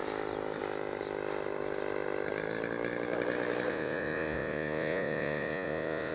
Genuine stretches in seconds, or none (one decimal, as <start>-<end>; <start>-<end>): 0.0-3.7